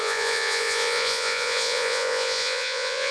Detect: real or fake fake